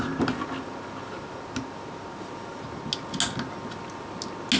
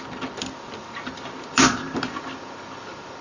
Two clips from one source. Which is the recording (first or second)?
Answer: first